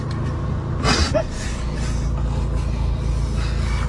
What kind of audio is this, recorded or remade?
recorded